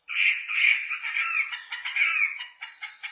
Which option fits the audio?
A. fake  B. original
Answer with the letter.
A